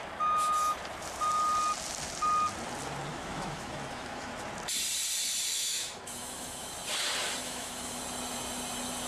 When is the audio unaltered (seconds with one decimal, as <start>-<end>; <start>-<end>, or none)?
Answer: 0.0-3.1; 4.3-5.5; 6.7-7.4; 8.0-9.1